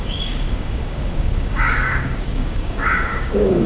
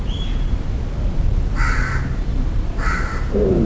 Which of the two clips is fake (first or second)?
first